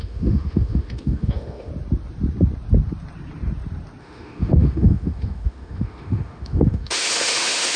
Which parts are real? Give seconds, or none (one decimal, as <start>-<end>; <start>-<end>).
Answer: 1.7-4.0